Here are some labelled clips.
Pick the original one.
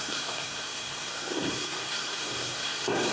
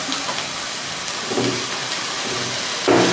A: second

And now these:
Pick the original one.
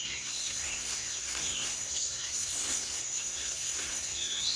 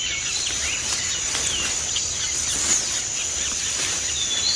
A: second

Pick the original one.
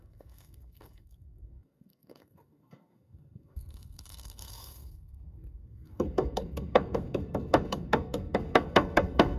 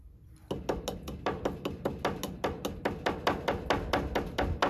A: second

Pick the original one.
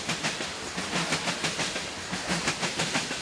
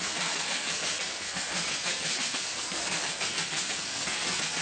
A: first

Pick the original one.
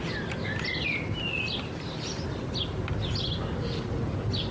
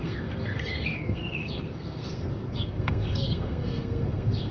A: first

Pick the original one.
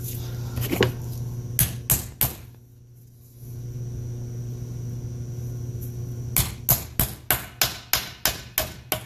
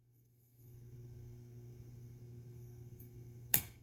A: first